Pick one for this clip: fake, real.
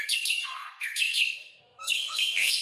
fake